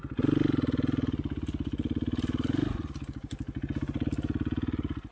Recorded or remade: recorded